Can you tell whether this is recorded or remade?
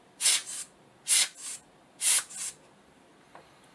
recorded